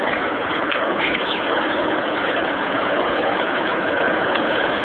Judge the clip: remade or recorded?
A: remade